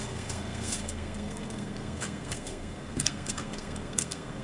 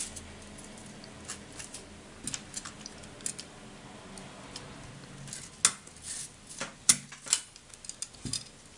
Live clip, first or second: second